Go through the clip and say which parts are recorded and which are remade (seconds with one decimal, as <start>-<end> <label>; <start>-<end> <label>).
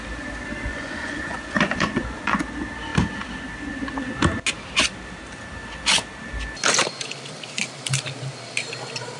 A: 0.0-0.7 recorded; 0.7-2.4 remade; 2.4-9.2 recorded